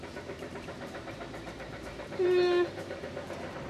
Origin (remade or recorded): remade